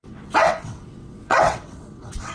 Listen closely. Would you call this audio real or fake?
fake